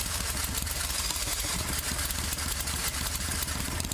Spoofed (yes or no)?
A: yes